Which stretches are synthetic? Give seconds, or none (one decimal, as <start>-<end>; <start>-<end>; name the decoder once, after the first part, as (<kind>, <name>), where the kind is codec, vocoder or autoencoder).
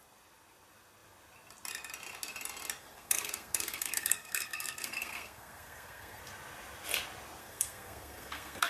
2.8-6.2 (codec, SNAC); 7.4-8.7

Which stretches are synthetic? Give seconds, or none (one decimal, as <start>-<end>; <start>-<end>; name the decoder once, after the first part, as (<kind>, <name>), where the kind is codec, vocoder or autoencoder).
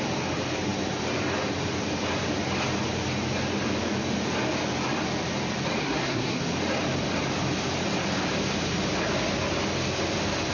5.8-6.4 (codec, SNAC)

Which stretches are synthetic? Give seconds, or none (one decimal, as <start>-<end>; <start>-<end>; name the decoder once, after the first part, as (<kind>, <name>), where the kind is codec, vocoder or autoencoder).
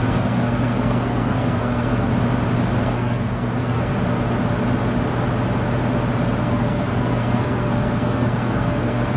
0.0-2.1 (codec, SNAC); 2.8-3.9; 6.4-9.2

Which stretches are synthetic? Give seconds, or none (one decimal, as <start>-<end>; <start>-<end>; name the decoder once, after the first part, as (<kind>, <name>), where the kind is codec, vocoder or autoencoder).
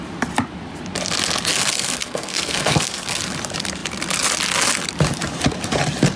1.5-3.2 (codec, SNAC)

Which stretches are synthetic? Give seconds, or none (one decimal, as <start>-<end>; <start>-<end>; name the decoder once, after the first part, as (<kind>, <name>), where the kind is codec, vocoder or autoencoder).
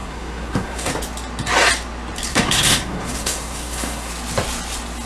0.0-0.9 (codec, SNAC); 2.3-4.1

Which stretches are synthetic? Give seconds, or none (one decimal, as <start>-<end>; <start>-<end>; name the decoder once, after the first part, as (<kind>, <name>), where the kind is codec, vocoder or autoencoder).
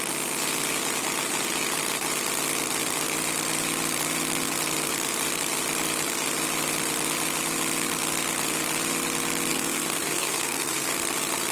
9.5-10.9 (codec, SNAC)